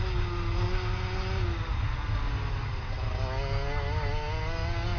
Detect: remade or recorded recorded